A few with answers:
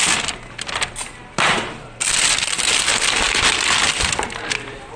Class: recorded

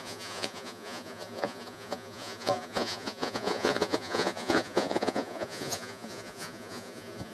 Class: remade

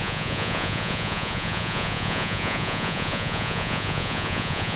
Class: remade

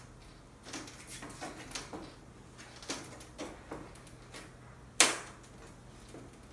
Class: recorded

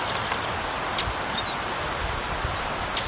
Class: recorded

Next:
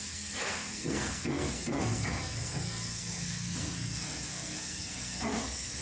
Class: remade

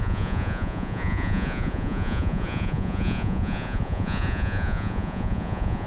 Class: remade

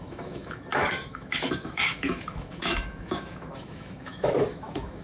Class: remade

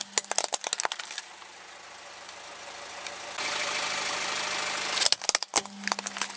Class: recorded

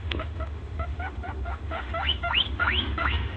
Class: remade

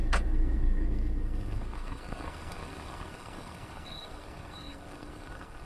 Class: remade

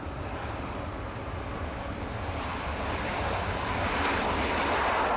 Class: recorded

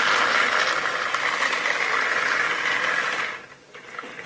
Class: recorded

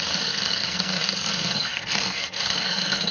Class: remade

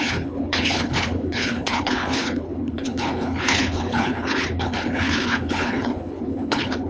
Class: remade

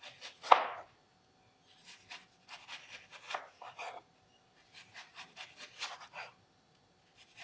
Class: recorded